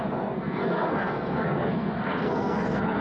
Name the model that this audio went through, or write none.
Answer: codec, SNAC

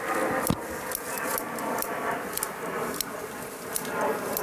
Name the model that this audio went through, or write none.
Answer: none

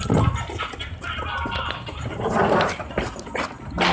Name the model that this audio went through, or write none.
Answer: none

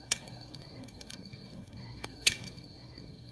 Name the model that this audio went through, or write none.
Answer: codec, SNAC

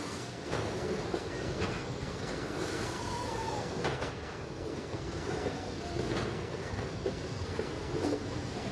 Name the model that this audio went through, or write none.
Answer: codec, SNAC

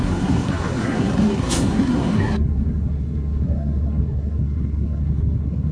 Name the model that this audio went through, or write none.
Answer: codec, SNAC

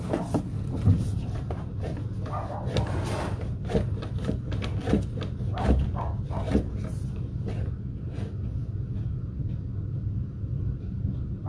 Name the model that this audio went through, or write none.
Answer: none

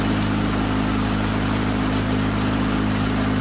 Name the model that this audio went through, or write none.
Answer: none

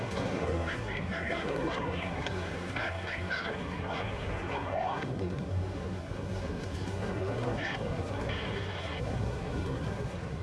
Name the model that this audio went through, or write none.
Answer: codec, SNAC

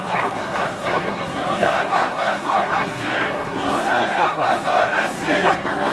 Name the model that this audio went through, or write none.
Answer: codec, SNAC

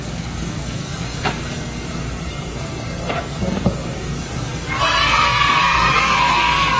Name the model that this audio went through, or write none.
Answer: codec, SNAC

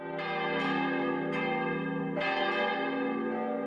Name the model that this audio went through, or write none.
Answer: none